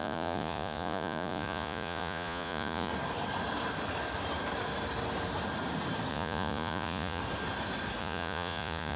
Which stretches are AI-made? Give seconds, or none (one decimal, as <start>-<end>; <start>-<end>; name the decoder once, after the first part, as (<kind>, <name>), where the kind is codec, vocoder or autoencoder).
0.0-2.9 (vocoder, Vocos); 6.1-7.2; 8.0-9.0